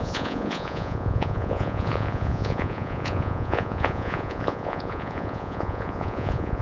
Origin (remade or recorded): remade